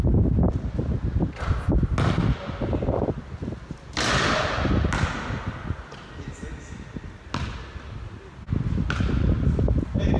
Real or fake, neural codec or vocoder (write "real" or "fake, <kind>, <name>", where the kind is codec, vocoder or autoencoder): real